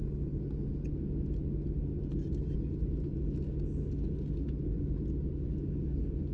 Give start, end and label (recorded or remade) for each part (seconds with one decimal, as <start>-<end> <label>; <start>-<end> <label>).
0.0-6.3 recorded